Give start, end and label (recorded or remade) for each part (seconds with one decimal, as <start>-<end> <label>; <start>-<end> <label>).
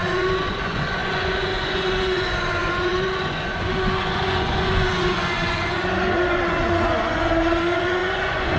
0.0-8.6 remade